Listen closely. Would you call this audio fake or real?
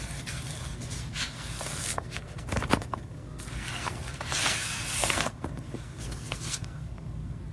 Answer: fake